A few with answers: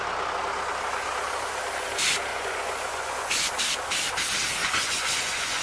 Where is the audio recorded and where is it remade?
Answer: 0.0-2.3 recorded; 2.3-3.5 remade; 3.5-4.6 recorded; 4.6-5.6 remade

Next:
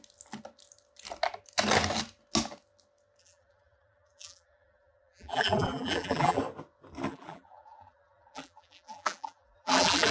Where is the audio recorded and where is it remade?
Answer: 0.0-3.2 recorded; 3.2-6.4 remade; 6.4-7.1 recorded; 7.1-10.1 remade